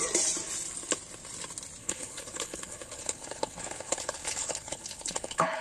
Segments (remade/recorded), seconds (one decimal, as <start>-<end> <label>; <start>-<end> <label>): 0.0-1.8 recorded; 1.8-5.6 remade